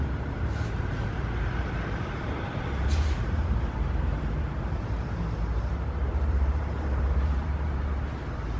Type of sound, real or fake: fake